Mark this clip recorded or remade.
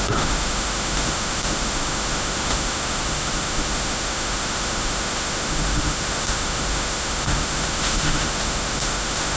remade